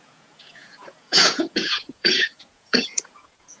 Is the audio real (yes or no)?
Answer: no